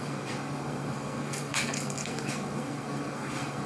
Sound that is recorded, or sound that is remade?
remade